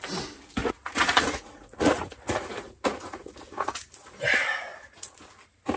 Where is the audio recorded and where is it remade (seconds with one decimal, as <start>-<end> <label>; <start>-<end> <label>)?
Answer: 0.0-0.6 recorded; 0.6-4.1 remade; 4.1-4.7 recorded; 4.7-5.3 remade; 5.3-5.8 recorded